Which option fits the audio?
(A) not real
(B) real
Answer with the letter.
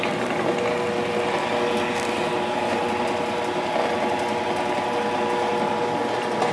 B